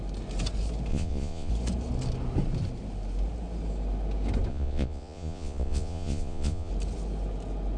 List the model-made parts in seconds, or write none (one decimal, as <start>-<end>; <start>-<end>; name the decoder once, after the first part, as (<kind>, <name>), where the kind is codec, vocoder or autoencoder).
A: 0.9-1.5 (vocoder, Vocos); 4.5-6.7